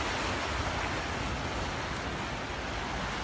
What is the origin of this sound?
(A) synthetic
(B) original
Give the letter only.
B